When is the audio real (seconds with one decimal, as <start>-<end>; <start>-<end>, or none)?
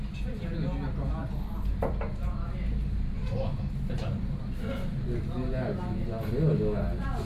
0.0-7.3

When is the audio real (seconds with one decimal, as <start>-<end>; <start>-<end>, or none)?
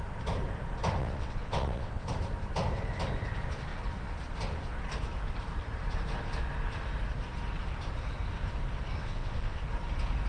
0.0-1.0; 2.1-9.0; 9.6-10.3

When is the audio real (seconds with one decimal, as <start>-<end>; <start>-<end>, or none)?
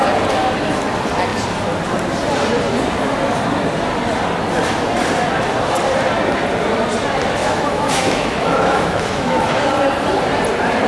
0.0-7.4; 9.5-10.9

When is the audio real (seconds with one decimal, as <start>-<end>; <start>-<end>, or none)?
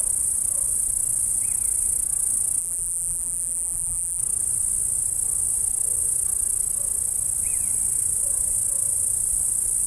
0.0-2.6; 4.2-9.9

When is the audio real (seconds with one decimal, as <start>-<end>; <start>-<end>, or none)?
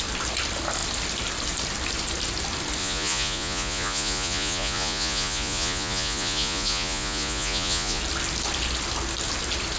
0.0-2.8; 8.0-9.8